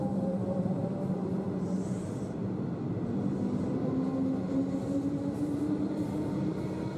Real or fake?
real